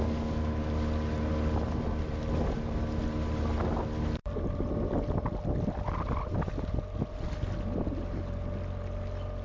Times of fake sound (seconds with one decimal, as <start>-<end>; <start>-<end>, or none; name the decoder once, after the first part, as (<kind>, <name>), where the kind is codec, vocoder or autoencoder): none